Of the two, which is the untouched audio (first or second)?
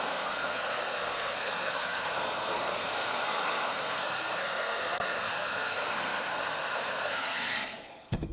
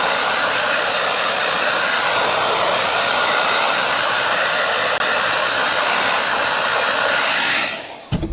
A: second